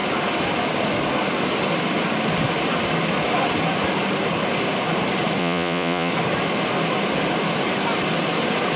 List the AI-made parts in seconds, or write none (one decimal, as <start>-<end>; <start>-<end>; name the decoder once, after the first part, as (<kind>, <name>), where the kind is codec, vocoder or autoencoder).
5.4-6.1 (vocoder, Vocos)